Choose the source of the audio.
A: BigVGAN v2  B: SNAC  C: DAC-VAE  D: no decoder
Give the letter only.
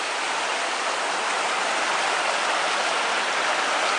D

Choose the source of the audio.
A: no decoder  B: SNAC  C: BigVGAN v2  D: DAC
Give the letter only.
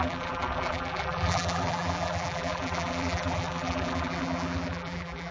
C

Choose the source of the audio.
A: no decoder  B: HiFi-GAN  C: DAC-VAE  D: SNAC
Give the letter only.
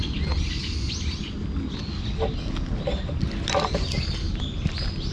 A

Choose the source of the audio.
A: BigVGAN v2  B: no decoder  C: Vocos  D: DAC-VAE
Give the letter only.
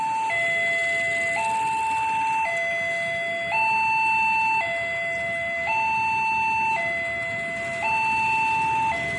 B